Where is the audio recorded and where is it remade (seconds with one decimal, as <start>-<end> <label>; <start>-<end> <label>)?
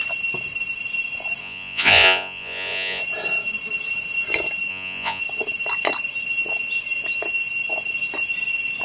0.0-1.4 recorded; 1.4-3.0 remade; 3.0-4.7 recorded; 4.7-5.2 remade; 5.2-8.8 recorded